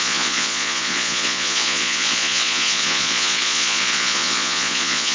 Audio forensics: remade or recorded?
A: remade